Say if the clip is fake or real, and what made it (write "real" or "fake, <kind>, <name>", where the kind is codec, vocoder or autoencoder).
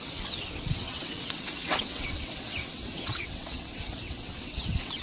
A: fake, vocoder, WaveNeXt